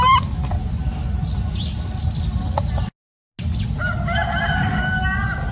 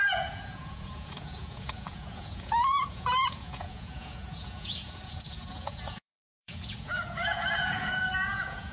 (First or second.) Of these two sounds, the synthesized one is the second